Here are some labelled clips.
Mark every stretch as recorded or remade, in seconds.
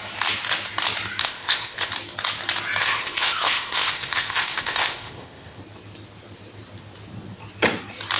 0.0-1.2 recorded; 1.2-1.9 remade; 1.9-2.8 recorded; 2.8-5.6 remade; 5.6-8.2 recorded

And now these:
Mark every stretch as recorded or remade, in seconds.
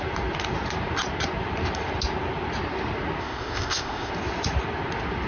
0.0-3.2 recorded; 3.2-4.1 remade; 4.1-5.3 recorded